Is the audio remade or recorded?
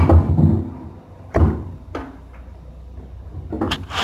recorded